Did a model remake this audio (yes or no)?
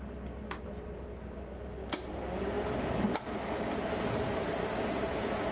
no